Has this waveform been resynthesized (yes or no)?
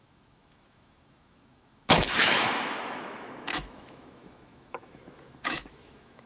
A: yes